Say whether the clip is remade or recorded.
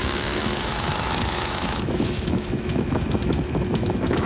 remade